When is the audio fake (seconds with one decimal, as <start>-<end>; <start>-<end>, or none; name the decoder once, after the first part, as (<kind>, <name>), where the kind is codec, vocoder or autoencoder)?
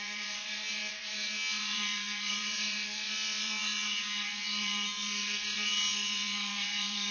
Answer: 0.0-7.1 (vocoder, WaveNeXt)